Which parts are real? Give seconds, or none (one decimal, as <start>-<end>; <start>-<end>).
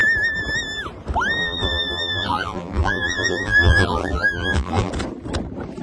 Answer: 0.0-1.4; 4.9-5.8